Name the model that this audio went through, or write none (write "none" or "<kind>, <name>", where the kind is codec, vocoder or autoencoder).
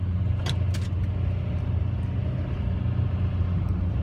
none